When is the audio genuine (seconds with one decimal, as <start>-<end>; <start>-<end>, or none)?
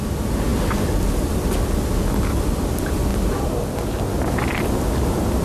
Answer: 0.0-5.4